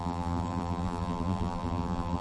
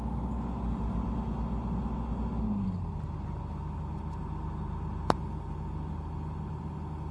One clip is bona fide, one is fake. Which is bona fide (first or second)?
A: second